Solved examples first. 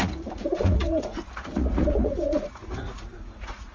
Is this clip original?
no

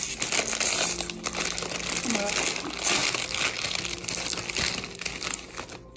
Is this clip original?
yes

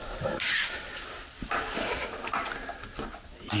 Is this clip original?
yes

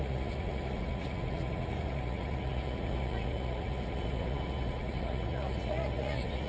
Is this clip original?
no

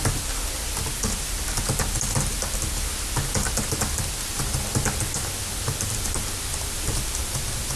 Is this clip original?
yes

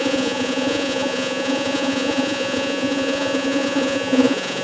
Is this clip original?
no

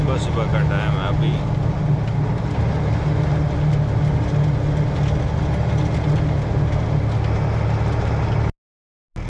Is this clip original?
yes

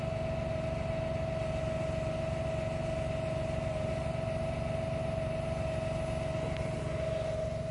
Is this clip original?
yes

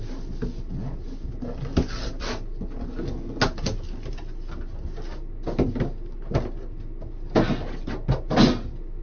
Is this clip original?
yes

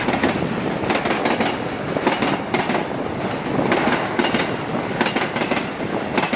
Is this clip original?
yes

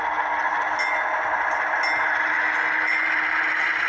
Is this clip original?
yes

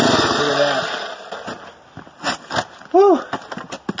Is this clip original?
yes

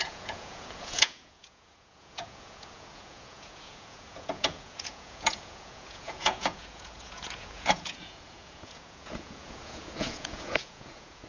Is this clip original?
no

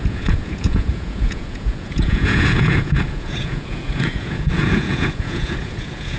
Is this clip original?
no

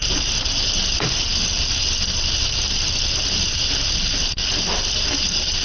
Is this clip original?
yes